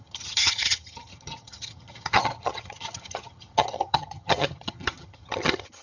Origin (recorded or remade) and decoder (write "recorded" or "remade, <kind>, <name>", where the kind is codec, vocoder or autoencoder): remade, vocoder, HiFi-GAN